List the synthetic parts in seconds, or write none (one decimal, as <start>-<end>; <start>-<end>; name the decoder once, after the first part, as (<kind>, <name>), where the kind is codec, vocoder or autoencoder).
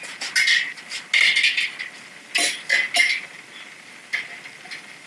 none